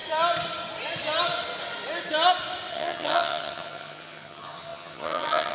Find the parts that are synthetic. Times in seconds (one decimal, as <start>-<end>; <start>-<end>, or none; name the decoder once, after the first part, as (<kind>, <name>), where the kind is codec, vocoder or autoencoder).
2.7-5.5 (vocoder, HiFi-GAN)